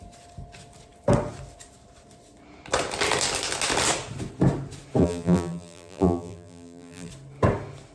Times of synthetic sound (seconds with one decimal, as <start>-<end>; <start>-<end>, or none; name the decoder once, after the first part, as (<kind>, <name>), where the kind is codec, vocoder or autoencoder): 5.0-7.1 (vocoder, BigVGAN v2)